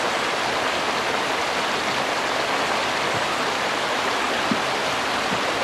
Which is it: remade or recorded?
recorded